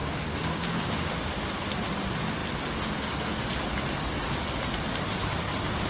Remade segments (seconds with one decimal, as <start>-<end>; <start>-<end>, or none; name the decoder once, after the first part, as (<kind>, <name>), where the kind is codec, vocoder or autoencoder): 0.0-1.3 (codec, DAC)